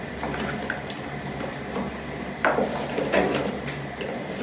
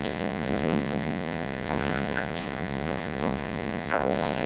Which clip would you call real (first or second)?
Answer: first